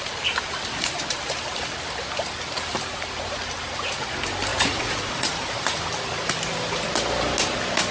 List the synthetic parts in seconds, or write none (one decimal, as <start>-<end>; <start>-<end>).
4.5-5.8